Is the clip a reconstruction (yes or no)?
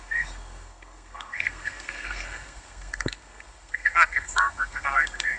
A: yes